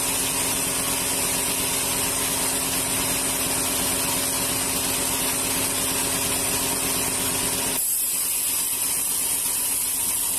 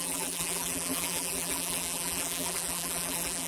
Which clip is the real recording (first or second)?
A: first